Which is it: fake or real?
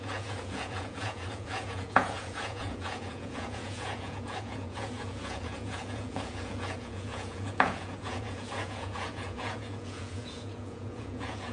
fake